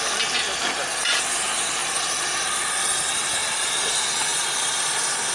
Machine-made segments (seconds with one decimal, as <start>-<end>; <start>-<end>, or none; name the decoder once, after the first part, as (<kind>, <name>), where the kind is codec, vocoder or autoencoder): 1.8-2.7 (vocoder, BigVGAN v2); 3.4-3.9